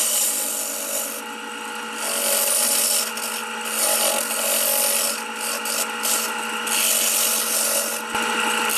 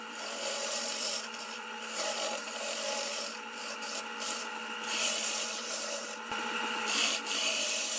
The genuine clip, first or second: first